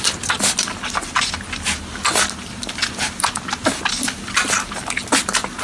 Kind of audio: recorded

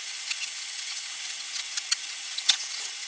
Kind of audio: remade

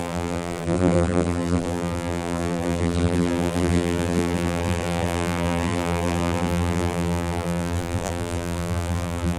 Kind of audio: remade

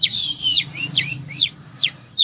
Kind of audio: remade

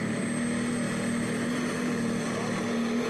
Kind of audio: recorded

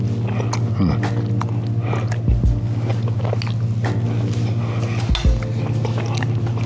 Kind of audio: recorded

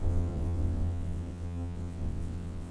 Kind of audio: remade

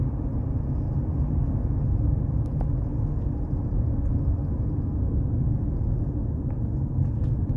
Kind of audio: recorded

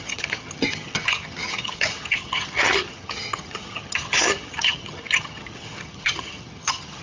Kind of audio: remade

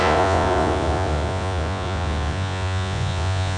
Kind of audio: remade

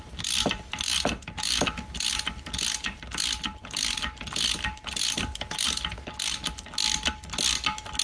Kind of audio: recorded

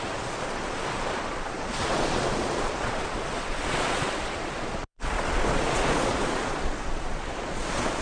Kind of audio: remade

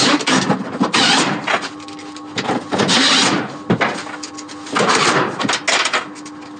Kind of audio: recorded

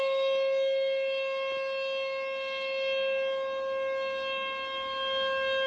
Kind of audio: recorded